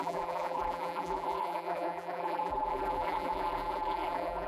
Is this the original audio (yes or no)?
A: no